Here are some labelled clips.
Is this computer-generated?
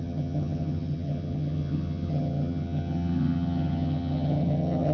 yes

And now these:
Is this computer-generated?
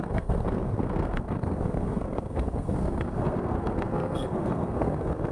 yes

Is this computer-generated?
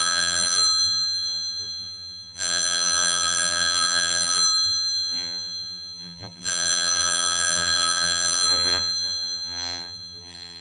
yes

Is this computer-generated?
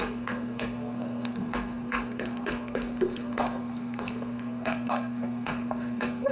yes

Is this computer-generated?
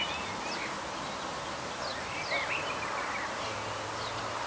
no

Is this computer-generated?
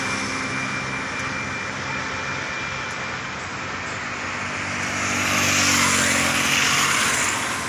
no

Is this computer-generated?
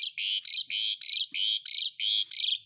no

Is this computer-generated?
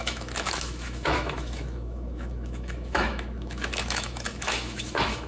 yes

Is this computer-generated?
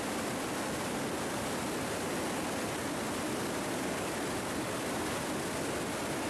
no